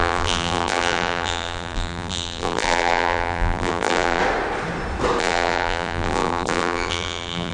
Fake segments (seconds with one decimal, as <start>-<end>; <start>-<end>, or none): 0.0-4.2; 5.2-7.5